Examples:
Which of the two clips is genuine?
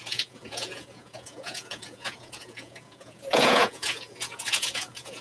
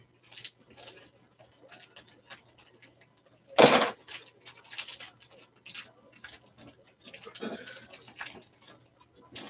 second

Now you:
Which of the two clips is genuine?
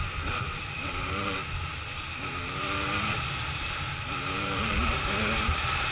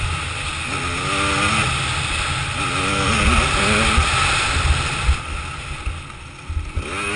second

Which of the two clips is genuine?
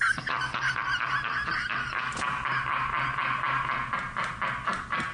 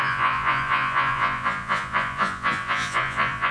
first